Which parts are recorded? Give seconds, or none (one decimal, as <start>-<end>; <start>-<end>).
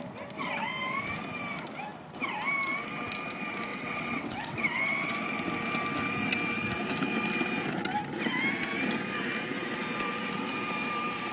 0.0-3.7; 5.1-11.3